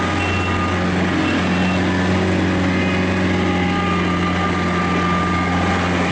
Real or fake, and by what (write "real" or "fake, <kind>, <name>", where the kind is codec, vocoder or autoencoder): real